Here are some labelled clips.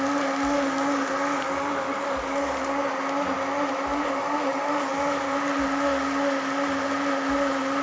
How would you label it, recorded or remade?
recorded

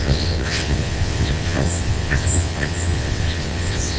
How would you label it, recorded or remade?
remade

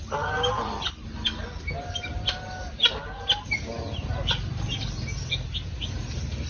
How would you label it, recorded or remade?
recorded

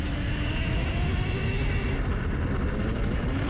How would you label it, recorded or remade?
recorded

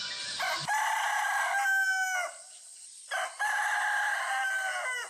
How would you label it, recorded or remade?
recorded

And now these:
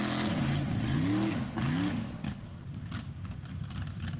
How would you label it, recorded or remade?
recorded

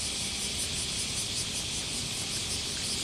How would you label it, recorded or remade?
recorded